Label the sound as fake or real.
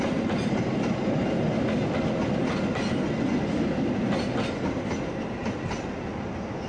real